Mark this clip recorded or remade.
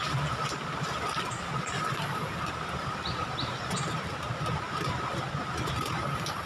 recorded